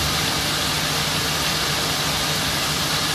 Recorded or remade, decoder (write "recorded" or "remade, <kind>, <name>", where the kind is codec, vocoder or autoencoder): recorded